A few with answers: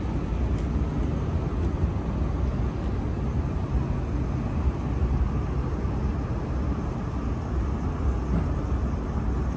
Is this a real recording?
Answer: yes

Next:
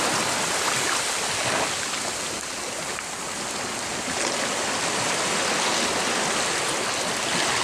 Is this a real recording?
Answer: yes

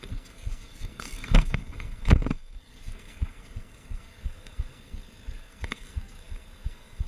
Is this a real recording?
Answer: no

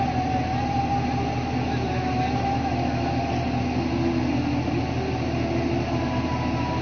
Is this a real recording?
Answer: yes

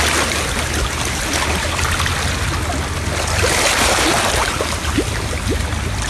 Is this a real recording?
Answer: yes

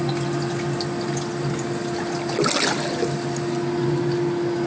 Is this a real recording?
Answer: yes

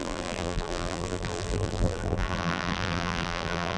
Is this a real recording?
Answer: no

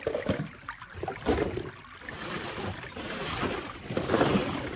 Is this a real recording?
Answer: no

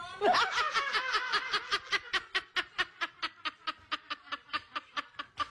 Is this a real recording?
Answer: yes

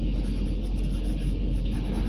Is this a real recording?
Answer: yes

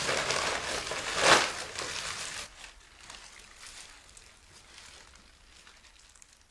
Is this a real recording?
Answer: yes